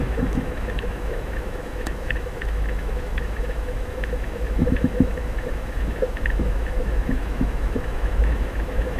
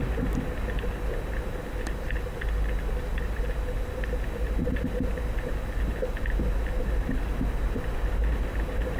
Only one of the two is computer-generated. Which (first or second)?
first